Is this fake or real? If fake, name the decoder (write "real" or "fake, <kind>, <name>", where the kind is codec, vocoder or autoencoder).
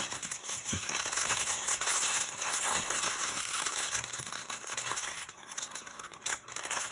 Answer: fake, codec, SNAC